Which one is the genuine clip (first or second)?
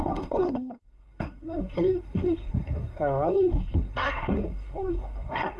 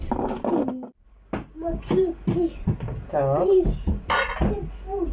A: second